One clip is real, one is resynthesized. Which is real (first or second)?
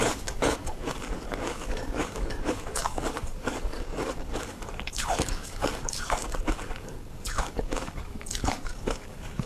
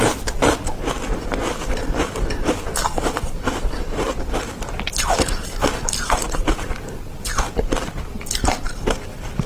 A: second